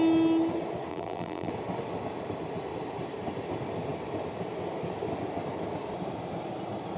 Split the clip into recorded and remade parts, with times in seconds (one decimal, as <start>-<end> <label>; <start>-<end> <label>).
0.0-0.9 recorded; 0.9-1.5 remade; 1.5-7.0 recorded